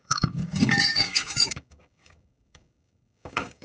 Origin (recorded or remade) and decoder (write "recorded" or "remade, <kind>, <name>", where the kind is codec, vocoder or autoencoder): remade, codec, DAC